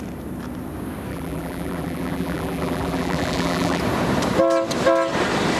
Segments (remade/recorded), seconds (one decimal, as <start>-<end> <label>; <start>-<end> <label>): 0.0-1.1 recorded; 1.1-3.8 remade; 3.8-5.6 recorded